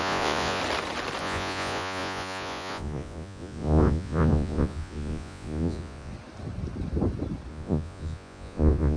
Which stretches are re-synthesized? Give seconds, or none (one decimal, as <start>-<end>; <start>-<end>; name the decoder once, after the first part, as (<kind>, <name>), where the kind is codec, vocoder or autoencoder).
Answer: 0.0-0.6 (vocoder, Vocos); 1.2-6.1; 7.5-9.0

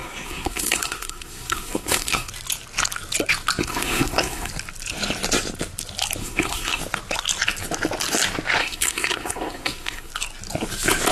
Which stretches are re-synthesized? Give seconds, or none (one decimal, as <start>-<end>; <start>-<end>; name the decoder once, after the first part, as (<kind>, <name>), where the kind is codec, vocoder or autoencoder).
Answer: 0.0-2.3 (codec, SNAC); 3.6-4.5; 6.2-6.8; 8.6-10.1

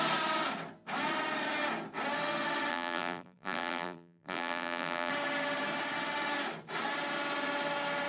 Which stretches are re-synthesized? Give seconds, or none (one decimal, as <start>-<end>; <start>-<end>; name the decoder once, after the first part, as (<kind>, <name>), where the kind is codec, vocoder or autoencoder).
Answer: 2.7-5.1 (vocoder, BigVGAN v2)

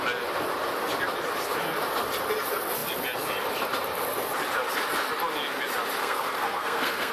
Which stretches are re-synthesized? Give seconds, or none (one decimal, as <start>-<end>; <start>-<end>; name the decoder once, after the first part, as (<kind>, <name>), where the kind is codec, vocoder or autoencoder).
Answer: 6.0-7.1 (codec, SNAC)